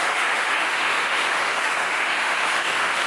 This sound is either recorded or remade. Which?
remade